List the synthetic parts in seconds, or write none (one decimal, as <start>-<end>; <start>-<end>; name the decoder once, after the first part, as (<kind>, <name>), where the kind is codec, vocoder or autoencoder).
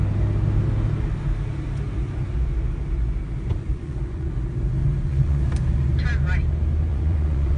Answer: 3.6-4.3 (vocoder, Vocos); 4.8-5.4; 6.9-7.6